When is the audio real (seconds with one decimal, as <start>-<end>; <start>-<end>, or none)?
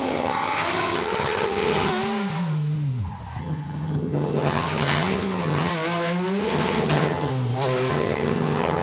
1.9-3.4; 5.7-6.4; 7.3-7.9